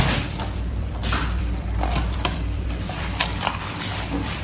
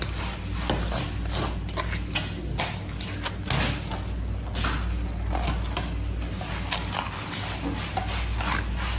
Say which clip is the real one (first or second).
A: second